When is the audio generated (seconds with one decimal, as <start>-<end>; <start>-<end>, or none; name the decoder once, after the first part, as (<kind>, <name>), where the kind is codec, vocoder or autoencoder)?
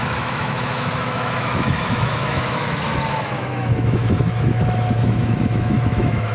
0.0-6.3 (autoencoder, DAC-VAE)